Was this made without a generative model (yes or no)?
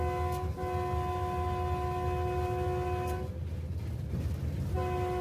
yes